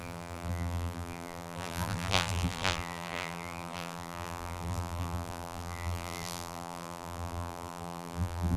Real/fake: fake